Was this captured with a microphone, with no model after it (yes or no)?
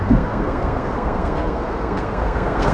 no